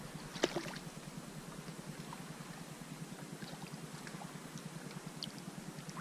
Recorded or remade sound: recorded